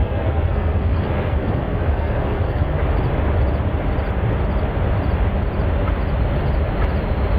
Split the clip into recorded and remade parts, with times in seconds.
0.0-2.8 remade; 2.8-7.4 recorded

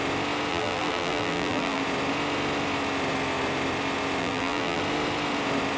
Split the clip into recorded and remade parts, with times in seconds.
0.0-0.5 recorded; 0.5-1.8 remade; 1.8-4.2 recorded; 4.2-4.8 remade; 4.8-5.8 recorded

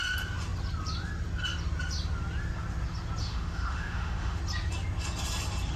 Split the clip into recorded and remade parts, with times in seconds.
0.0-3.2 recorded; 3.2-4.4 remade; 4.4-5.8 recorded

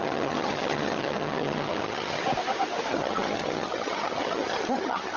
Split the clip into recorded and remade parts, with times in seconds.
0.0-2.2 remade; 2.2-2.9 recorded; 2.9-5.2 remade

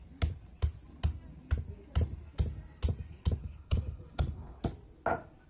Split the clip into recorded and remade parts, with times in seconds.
0.0-3.4 recorded; 3.4-4.6 remade; 4.6-5.5 recorded

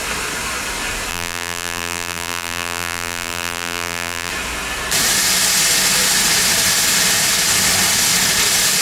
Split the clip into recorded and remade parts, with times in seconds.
0.0-1.1 recorded; 1.1-4.3 remade; 4.3-8.8 recorded

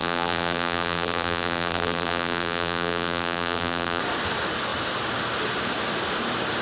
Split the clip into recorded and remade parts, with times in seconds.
0.0-4.0 remade; 4.0-6.6 recorded

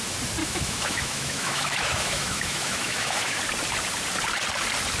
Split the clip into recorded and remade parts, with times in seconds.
0.0-0.4 recorded; 0.4-3.4 remade; 3.4-5.0 recorded